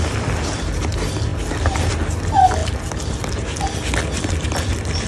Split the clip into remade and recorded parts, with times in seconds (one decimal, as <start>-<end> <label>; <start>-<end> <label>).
0.0-5.1 recorded